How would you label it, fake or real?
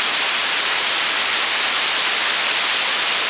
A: real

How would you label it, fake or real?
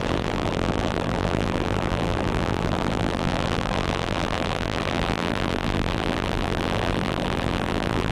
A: fake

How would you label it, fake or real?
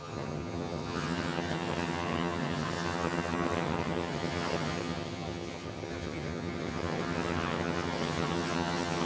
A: fake